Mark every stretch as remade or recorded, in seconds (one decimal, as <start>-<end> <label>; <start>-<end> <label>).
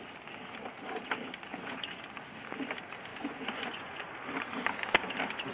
0.0-1.5 recorded; 1.5-2.0 remade; 2.0-3.1 recorded; 3.1-4.1 remade; 4.1-5.5 recorded